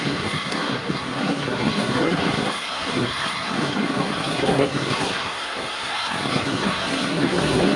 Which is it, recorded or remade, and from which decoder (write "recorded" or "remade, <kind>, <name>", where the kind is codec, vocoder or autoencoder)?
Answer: remade, codec, SNAC